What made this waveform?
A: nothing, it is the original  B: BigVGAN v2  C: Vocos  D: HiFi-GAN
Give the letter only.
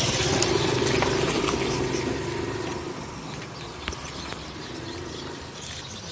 A